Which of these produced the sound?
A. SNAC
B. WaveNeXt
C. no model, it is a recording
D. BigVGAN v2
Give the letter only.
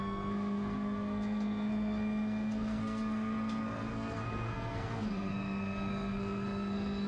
A